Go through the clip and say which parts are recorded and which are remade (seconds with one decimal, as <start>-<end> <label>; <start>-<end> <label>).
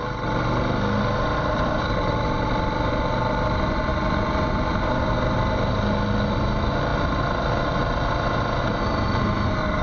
0.0-9.8 recorded